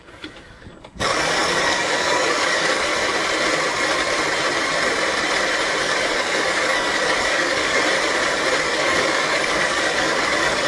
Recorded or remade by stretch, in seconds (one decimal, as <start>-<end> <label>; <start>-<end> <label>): 0.0-2.9 remade; 2.9-5.8 recorded; 5.8-7.8 remade; 7.8-8.6 recorded; 8.6-10.7 remade